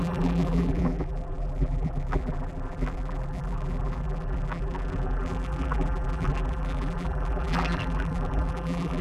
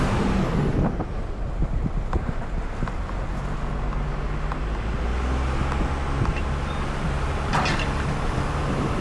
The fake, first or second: first